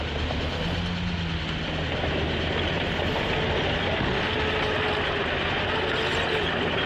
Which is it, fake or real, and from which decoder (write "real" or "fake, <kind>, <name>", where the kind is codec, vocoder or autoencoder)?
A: real